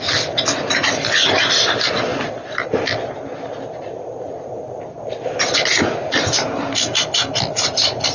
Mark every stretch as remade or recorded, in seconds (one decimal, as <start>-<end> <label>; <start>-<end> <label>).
0.0-8.1 recorded